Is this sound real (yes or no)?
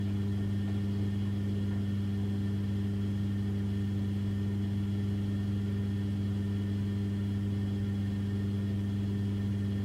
yes